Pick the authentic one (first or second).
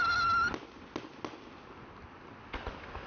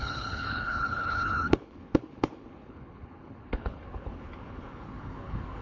first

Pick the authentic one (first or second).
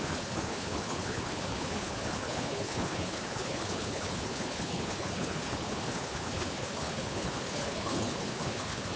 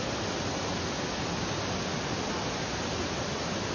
second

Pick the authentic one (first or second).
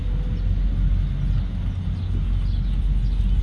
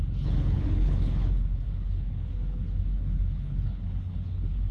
first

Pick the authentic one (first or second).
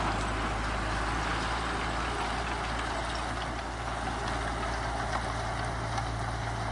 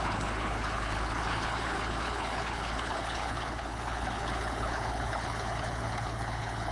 first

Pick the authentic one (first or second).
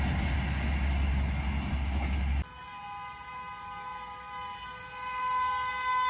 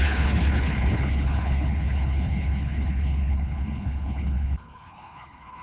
first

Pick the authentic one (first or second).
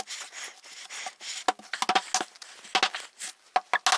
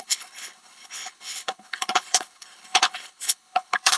first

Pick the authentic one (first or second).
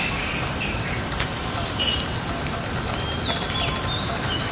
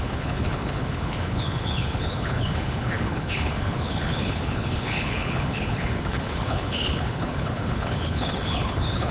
first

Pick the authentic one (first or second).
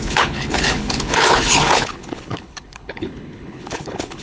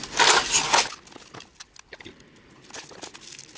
second